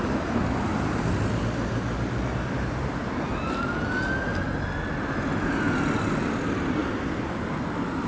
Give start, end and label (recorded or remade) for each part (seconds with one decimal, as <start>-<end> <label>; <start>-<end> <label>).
0.0-8.1 recorded